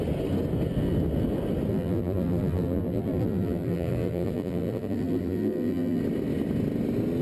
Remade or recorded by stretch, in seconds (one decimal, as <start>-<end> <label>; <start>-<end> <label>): 0.0-1.7 recorded; 1.7-6.0 remade; 6.0-7.2 recorded

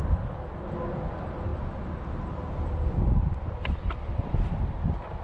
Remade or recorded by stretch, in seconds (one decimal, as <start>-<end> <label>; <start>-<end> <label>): 0.0-5.2 recorded

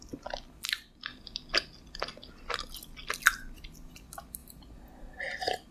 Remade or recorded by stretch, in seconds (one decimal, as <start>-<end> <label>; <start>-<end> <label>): 0.0-5.7 recorded